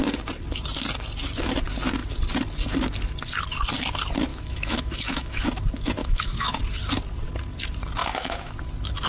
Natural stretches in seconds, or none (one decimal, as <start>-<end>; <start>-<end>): 0.0-4.3; 5.4-6.0; 6.6-8.0; 8.5-9.1